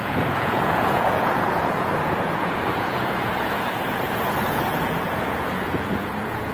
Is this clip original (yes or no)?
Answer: no